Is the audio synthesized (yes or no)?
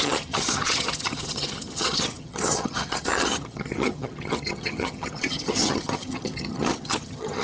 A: yes